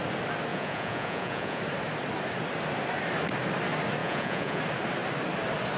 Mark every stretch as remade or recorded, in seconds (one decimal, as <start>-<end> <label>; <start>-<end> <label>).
0.0-0.5 recorded; 0.5-1.6 remade; 1.6-4.0 recorded; 4.0-4.6 remade; 4.6-5.8 recorded